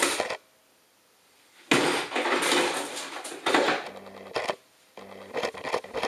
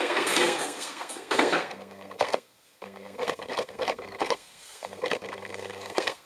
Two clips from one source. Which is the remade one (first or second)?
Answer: second